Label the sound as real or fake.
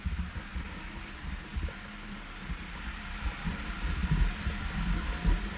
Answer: real